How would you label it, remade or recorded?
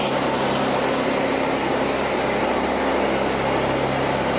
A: recorded